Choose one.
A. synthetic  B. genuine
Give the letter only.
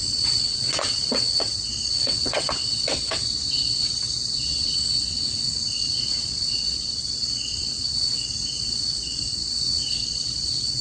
A